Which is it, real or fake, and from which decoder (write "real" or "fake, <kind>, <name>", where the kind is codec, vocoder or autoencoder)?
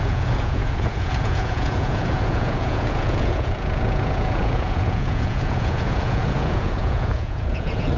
fake, vocoder, Vocos